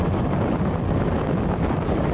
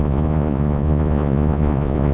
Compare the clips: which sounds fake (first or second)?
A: second